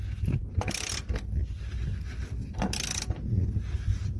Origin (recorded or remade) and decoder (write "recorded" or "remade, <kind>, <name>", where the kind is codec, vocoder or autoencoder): recorded